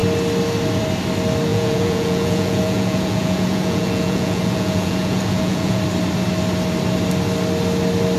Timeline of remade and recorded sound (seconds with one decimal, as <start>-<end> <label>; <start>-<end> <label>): 0.0-1.5 recorded; 1.5-5.8 remade; 5.8-8.2 recorded